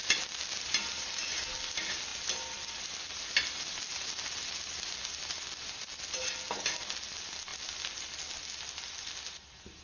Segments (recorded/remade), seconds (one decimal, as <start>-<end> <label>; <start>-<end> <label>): 0.0-9.8 recorded